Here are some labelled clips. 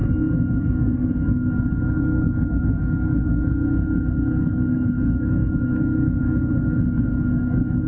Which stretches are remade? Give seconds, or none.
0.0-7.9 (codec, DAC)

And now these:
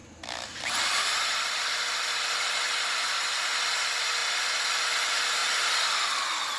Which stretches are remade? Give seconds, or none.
0.0-3.2 (vocoder, BigVGAN v2); 4.2-4.8; 5.4-6.1

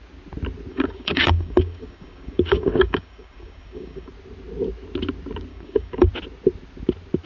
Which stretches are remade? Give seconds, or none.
0.7-4.1 (codec, DAC); 5.5-6.1

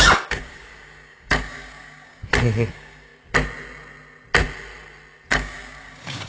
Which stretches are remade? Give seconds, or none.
0.0-2.2 (codec, DAC); 2.7-3.1; 5.3-6.3

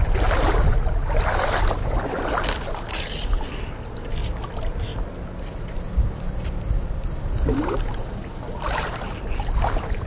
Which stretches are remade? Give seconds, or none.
none

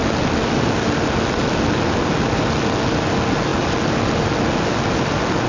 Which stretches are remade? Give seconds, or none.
none